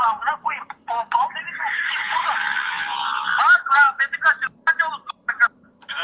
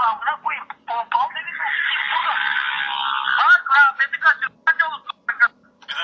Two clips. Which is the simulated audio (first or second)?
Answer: first